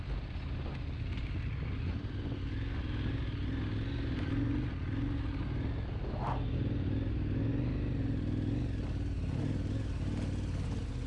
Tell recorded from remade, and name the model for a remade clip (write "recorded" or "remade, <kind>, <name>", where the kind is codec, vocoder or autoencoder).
recorded